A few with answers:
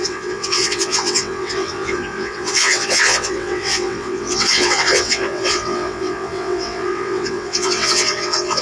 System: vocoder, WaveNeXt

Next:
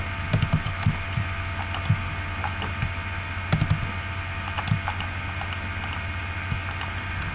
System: none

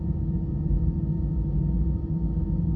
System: none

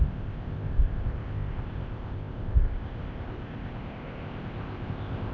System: codec, ZipCodec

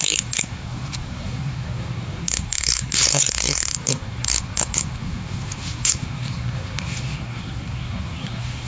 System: codec, SNAC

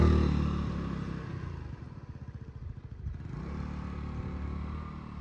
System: none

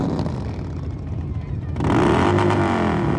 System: none